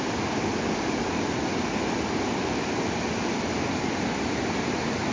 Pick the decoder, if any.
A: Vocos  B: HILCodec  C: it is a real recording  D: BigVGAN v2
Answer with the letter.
C